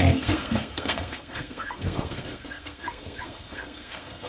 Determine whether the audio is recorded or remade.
remade